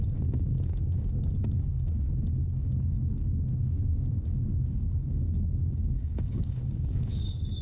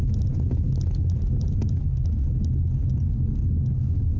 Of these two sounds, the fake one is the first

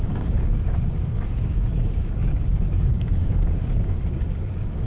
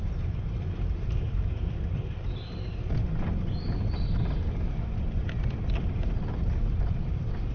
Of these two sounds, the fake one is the first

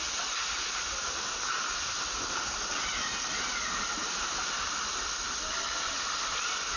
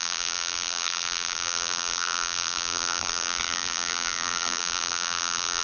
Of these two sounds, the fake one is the second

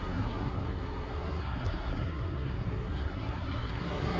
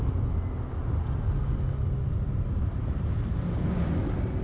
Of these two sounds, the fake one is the first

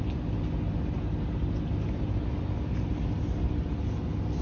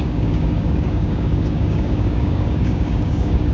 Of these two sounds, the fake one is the second